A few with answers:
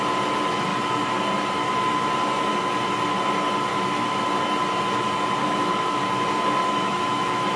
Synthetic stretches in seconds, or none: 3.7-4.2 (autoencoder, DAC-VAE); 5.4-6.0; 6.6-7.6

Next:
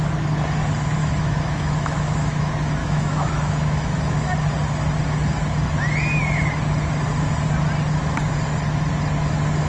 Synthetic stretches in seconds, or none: 1.0-2.4 (autoencoder, DAC-VAE); 2.8-4.3

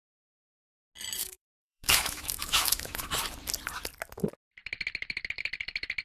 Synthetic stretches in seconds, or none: 1.2-3.1 (autoencoder, DAC-VAE)

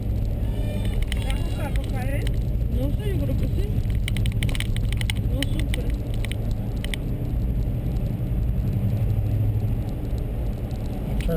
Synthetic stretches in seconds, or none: none